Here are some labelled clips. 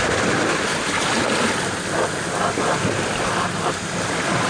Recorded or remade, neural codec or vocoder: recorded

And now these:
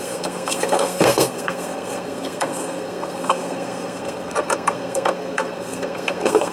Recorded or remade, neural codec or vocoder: remade, codec, SNAC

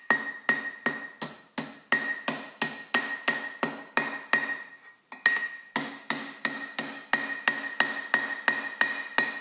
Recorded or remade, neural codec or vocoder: recorded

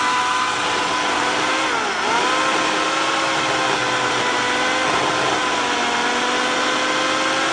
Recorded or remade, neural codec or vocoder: recorded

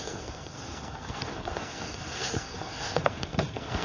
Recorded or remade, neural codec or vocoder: remade, codec, SNAC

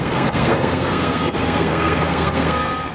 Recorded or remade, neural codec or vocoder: remade, codec, SNAC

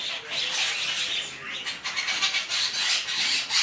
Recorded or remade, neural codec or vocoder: recorded